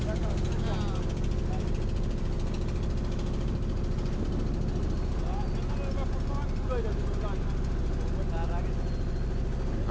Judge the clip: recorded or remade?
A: recorded